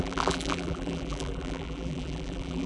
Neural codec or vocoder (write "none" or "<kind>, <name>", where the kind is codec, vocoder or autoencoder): vocoder, BigVGAN v2